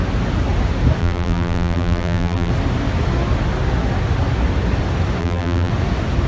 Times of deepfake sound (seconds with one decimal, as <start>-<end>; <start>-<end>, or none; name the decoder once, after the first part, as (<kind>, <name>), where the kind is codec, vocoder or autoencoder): 1.0-2.5 (vocoder, BigVGAN v2); 5.2-5.7